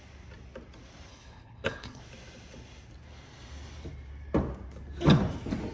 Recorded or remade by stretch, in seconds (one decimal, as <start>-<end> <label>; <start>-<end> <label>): 0.0-1.1 recorded; 1.1-2.0 remade; 2.0-5.7 recorded